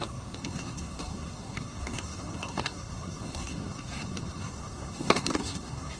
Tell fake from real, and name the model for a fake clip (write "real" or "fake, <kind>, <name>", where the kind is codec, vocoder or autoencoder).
fake, codec, SNAC